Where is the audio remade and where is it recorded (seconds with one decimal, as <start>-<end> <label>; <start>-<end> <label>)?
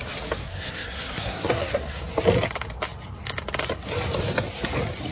0.0-0.4 recorded; 0.4-2.0 remade; 2.0-5.1 recorded